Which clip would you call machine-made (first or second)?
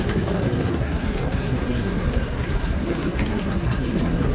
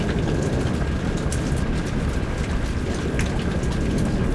first